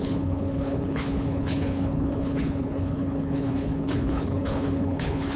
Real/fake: fake